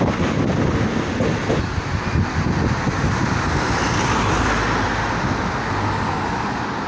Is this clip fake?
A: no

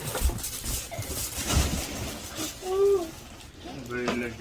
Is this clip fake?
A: no